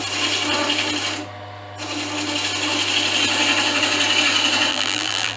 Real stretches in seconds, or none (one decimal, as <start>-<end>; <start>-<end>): 0.0-4.7